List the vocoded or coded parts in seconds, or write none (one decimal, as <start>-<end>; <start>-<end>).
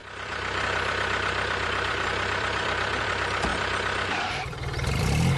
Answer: 0.0-3.1; 3.5-5.4